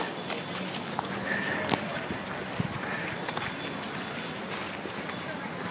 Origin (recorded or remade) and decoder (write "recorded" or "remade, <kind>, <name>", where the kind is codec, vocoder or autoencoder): recorded